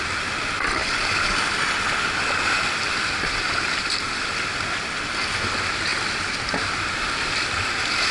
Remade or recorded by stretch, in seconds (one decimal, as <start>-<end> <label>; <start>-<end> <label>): 0.0-8.1 recorded